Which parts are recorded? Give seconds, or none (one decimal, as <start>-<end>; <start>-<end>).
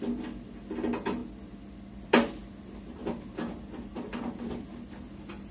0.0-5.5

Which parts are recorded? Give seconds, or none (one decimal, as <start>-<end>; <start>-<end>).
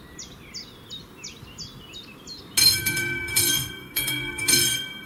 0.0-2.6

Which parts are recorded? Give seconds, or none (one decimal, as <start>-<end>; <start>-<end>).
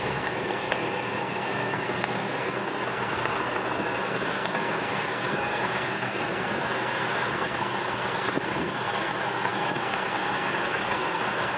none